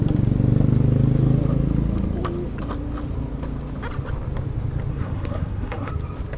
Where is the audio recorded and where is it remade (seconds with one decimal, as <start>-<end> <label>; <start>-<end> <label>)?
0.0-4.9 recorded; 4.9-5.9 remade; 5.9-6.4 recorded